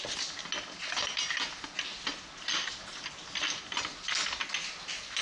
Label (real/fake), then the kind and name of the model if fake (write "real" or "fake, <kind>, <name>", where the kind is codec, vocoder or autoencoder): real